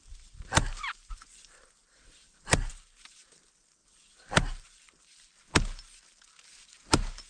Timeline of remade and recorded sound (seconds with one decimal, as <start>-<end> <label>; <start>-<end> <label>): 0.0-1.8 recorded; 1.8-2.7 remade; 2.7-3.8 recorded; 3.8-4.6 remade; 4.6-7.3 recorded